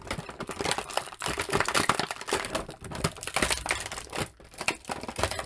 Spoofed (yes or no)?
yes